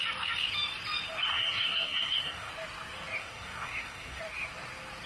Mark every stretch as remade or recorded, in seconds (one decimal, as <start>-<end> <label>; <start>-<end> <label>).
0.0-1.3 recorded; 1.3-2.5 remade; 2.5-3.2 recorded; 3.2-4.2 remade; 4.2-5.1 recorded